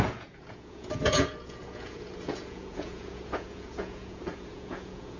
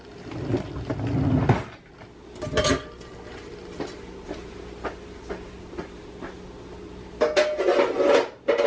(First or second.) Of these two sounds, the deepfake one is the first